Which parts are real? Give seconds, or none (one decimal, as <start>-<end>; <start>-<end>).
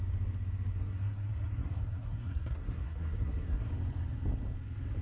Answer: 0.0-0.7; 3.7-5.0